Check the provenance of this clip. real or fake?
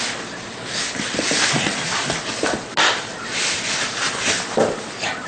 real